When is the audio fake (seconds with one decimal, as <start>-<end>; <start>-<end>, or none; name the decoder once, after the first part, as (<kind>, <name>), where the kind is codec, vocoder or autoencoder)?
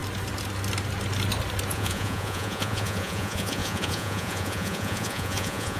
1.7-5.8 (vocoder, Vocos)